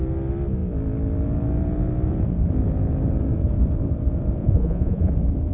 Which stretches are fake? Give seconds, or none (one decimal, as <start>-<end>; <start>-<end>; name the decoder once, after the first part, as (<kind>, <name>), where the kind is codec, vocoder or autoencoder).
4.4-5.1 (vocoder, Vocos)